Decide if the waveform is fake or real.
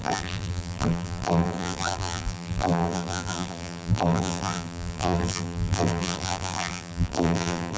fake